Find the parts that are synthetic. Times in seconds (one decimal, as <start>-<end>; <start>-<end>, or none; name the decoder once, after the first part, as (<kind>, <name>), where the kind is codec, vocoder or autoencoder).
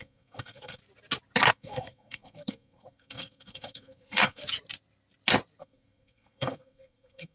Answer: 0.0-0.8 (codec, SNAC); 1.5-4.4; 5.6-7.3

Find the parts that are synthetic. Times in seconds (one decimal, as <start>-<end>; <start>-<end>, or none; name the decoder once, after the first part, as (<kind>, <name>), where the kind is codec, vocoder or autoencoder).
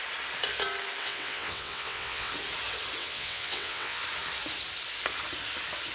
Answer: 1.0-2.3 (vocoder, WaveNeXt); 3.0-4.0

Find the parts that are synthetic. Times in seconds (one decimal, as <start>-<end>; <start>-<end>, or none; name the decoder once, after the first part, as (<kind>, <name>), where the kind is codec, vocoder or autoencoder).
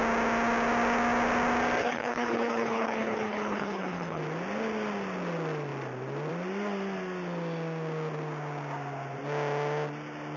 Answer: 1.8-4.2 (codec, HILCodec)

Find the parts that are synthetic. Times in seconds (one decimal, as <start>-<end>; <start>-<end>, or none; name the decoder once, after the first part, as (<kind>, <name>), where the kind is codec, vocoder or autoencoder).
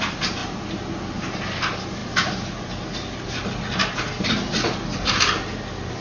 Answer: none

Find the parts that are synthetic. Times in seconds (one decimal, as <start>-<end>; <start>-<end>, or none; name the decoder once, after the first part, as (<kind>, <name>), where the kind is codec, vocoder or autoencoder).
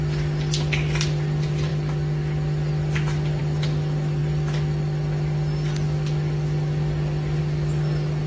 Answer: none